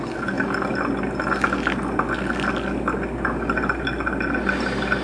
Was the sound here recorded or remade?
recorded